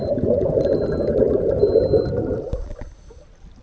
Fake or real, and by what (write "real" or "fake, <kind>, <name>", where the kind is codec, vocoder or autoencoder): real